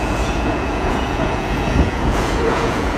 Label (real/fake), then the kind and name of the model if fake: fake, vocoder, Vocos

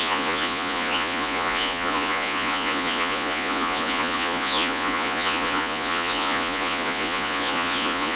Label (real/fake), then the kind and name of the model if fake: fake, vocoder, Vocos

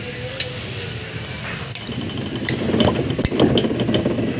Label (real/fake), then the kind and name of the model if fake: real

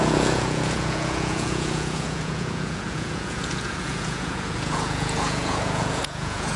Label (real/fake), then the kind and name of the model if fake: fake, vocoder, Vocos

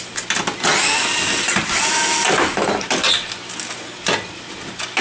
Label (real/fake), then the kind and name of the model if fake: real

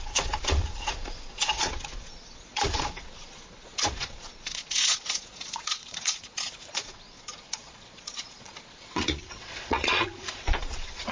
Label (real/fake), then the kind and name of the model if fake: fake, vocoder, Vocos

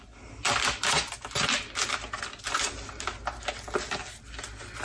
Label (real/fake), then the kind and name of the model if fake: real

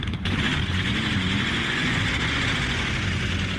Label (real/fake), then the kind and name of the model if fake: fake, vocoder, Vocos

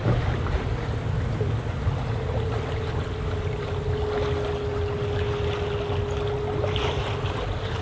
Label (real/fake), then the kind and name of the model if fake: real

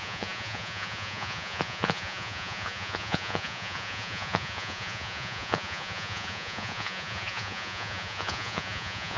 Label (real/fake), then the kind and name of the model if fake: fake, vocoder, Vocos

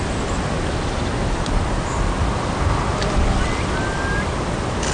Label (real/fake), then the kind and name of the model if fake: real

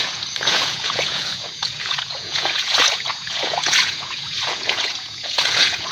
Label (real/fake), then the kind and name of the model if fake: fake, vocoder, Vocos